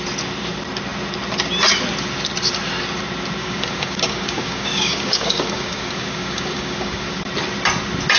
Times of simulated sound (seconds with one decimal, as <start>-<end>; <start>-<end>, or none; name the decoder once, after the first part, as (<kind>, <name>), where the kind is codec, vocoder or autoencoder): 3.4-7.2 (codec, DAC)